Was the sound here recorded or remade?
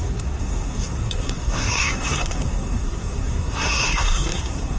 remade